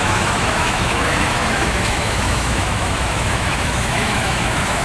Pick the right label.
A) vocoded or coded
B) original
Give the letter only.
A